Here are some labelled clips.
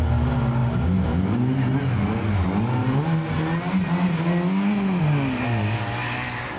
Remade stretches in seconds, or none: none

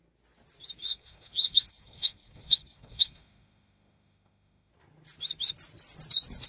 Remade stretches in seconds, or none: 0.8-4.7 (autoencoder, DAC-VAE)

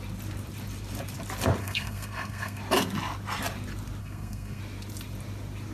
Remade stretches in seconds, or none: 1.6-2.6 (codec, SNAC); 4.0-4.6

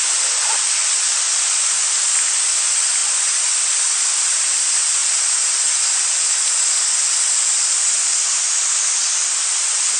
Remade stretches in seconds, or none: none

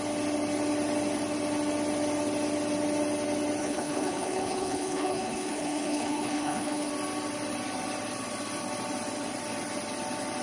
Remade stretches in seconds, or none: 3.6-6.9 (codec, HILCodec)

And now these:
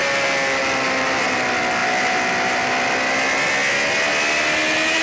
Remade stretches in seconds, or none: none

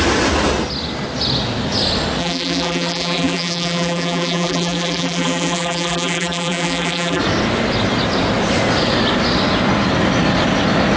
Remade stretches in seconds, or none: 2.2-7.2 (vocoder, BigVGAN v2)

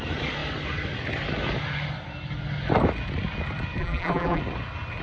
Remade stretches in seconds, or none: 3.8-4.4 (vocoder, BigVGAN v2)